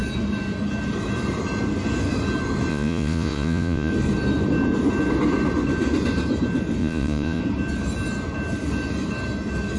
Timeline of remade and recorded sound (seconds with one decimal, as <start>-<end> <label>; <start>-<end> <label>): 0.0-2.7 recorded; 2.7-3.9 remade; 3.9-6.8 recorded; 6.8-7.4 remade; 7.4-9.8 recorded